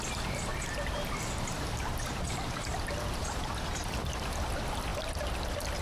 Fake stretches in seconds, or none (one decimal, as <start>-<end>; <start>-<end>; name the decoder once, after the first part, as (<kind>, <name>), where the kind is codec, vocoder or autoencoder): none